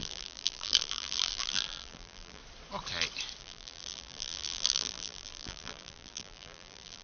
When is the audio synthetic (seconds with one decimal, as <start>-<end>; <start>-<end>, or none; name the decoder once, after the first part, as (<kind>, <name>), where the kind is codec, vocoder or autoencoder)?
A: 0.0-2.4 (vocoder, BigVGAN v2); 3.4-7.0